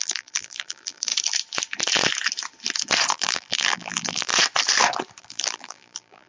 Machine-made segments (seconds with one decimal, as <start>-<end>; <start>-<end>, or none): 0.0-1.1; 3.1-4.3; 5.2-6.3